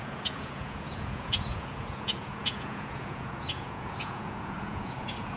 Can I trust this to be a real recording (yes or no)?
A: no